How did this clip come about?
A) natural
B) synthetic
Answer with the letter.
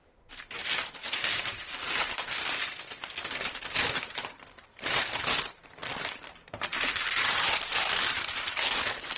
B